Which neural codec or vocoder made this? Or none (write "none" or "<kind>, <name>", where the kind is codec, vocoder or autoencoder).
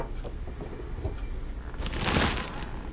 none